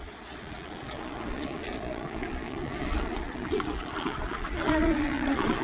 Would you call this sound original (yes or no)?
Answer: no